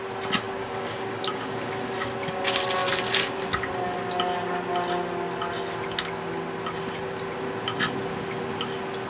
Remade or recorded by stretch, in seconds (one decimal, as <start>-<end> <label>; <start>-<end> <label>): 0.0-0.6 recorded; 0.6-1.7 remade; 1.7-9.1 recorded